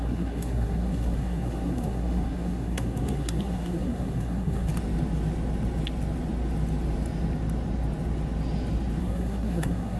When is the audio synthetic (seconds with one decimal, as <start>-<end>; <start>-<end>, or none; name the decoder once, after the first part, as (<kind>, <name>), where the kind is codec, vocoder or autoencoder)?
0.0-4.7 (codec, SNAC); 9.0-10.0